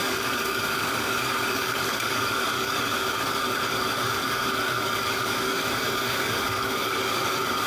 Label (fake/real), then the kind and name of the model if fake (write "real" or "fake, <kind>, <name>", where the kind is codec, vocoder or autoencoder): fake, codec, DAC